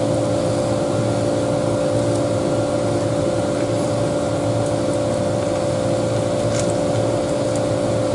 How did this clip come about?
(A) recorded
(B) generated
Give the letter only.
A